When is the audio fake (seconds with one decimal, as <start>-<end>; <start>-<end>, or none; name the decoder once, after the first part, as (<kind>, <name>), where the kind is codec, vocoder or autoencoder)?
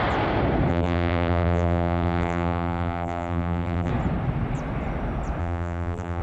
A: 0.7-3.9 (vocoder, BigVGAN v2); 5.4-6.2